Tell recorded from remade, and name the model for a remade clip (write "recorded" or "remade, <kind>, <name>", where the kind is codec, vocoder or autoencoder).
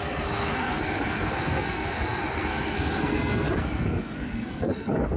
remade, codec, SNAC